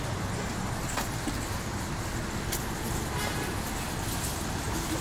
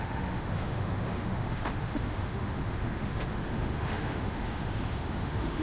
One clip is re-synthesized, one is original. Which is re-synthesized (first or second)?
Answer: second